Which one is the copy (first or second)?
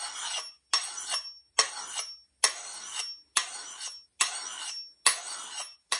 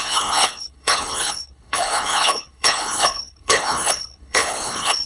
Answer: second